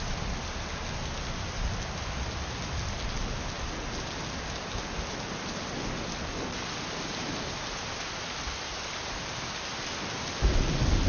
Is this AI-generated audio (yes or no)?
no